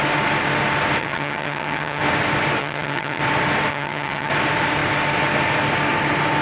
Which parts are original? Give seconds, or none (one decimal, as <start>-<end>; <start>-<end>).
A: 0.0-1.0; 2.0-2.6; 3.2-3.7; 4.3-6.4